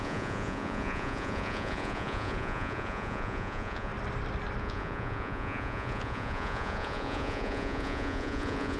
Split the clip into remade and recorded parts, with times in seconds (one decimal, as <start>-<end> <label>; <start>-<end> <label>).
0.0-3.9 remade; 3.9-4.6 recorded; 4.6-8.8 remade